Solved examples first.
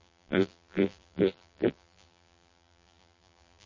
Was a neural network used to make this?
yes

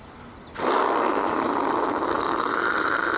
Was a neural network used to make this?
no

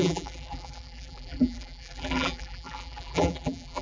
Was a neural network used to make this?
yes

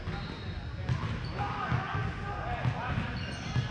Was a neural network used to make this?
no